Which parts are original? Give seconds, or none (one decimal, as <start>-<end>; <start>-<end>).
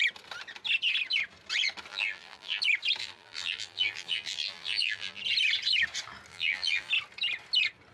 0.0-1.9; 2.6-3.0; 5.2-6.3; 6.9-7.9